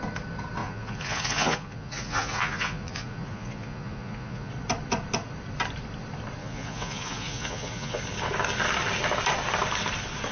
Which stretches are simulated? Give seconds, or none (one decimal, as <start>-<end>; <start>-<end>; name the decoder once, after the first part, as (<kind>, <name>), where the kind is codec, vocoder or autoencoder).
0.6-4.5 (vocoder, Vocos); 6.4-8.0